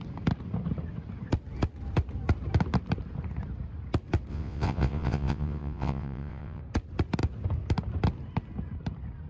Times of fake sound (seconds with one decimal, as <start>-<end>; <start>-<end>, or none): 4.3-6.6